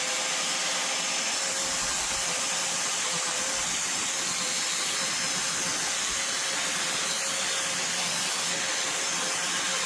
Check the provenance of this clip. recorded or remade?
recorded